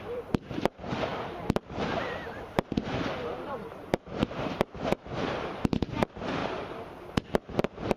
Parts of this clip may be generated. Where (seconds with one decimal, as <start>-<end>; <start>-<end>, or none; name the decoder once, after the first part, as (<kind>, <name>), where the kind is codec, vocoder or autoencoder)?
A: 0.0-8.0 (vocoder, BigVGAN v2)